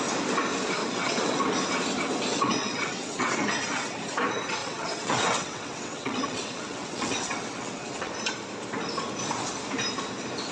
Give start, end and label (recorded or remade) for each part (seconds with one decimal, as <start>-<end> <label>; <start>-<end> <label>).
0.0-0.8 recorded; 0.8-1.4 remade; 1.4-2.3 recorded; 2.3-3.5 remade; 3.5-4.6 recorded; 4.6-8.1 remade; 8.1-10.5 recorded